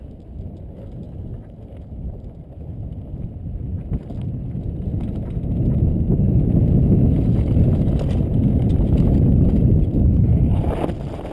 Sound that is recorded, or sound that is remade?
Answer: recorded